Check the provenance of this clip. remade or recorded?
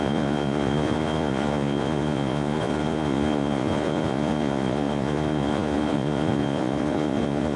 remade